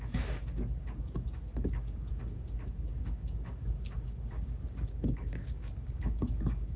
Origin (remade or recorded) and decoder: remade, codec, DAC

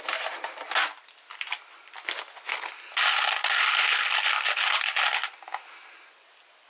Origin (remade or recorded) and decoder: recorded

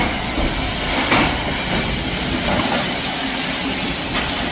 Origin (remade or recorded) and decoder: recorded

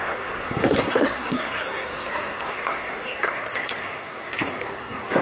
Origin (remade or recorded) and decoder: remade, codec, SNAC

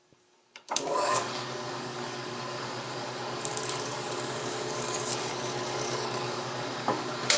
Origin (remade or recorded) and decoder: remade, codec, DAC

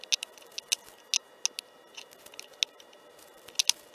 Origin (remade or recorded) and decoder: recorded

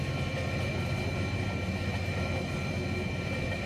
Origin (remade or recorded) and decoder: recorded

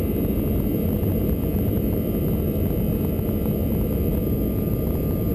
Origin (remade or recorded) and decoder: recorded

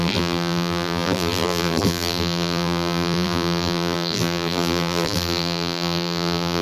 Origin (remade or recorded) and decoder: remade, vocoder, BigVGAN v2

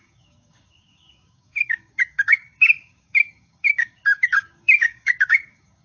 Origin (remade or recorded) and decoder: remade, codec, DAC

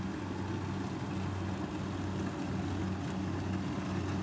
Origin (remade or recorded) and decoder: recorded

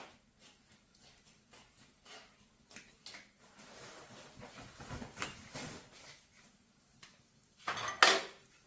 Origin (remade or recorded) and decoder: recorded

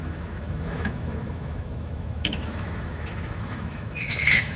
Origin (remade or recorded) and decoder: remade, autoencoder, DAC-VAE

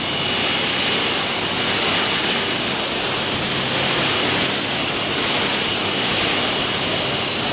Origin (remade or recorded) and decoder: recorded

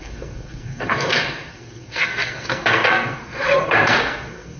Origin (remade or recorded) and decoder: remade, codec, SNAC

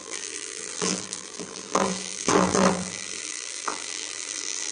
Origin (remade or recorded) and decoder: remade, vocoder, BigVGAN v2